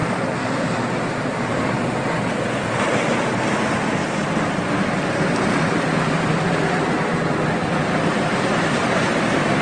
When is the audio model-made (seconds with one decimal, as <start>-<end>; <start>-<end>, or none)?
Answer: 0.0-9.6